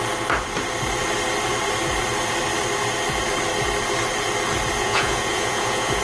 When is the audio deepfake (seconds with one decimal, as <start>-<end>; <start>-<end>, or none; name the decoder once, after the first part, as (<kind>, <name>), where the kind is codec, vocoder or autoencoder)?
4.8-6.0 (vocoder, Vocos)